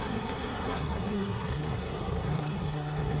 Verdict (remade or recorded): remade